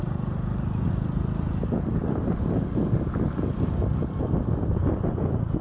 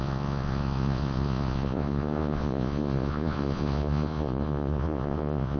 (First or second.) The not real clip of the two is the second